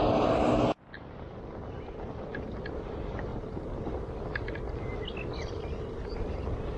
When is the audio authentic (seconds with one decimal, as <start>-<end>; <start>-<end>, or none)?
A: 0.0-3.3; 4.0-6.8